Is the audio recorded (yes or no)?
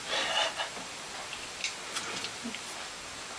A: yes